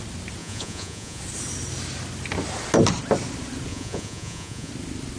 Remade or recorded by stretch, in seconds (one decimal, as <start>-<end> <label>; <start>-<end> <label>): 0.0-0.4 recorded; 0.4-1.2 remade; 1.2-3.7 recorded; 3.7-4.7 remade; 4.7-5.2 recorded